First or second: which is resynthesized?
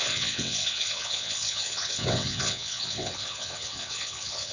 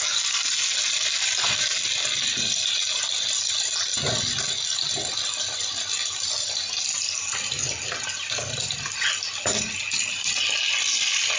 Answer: first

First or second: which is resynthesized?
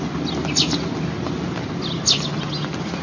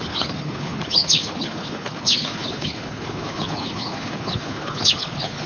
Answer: second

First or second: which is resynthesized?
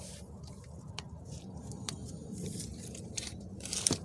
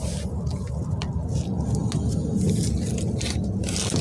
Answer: first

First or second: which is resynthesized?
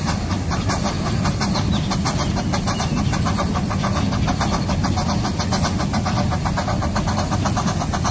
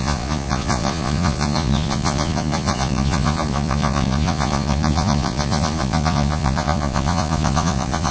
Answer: second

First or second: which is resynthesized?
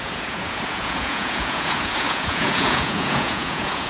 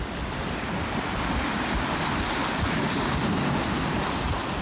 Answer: first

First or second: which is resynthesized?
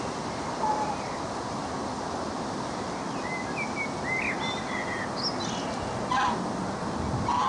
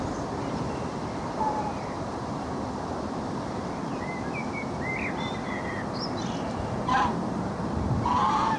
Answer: second